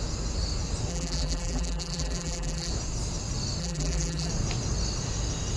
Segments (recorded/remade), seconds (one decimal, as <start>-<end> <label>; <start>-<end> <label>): 0.0-0.9 recorded; 0.9-2.7 remade; 2.7-3.6 recorded; 3.6-4.3 remade; 4.3-5.6 recorded